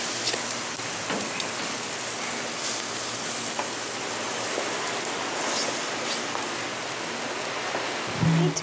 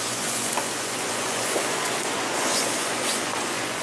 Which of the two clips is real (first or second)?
first